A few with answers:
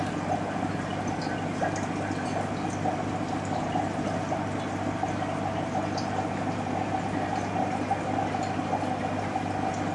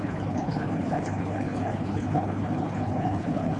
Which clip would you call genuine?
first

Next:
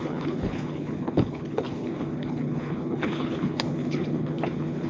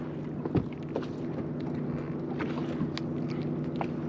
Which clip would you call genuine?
second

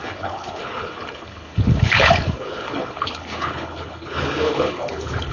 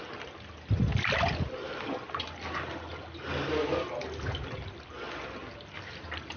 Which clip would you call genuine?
second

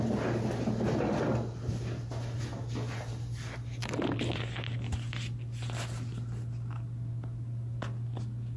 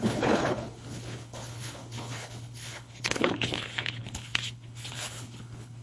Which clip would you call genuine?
first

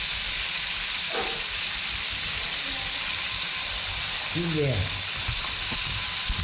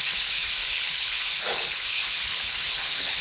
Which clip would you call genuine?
first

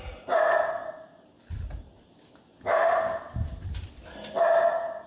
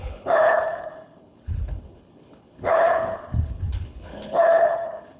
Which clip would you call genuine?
first